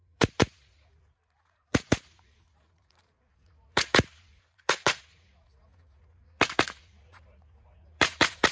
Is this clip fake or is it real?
fake